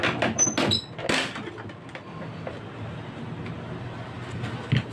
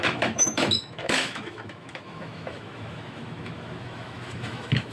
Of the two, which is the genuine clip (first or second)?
first